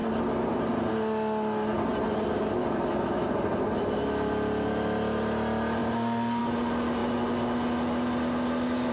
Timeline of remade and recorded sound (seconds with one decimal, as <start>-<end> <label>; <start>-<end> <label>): 0.0-8.9 recorded